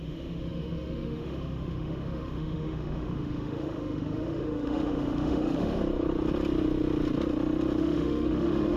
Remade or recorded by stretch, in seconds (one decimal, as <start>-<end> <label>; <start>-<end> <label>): 0.0-5.8 remade; 5.8-7.8 recorded; 7.8-8.8 remade